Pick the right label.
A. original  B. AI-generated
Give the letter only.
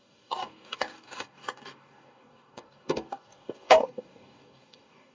B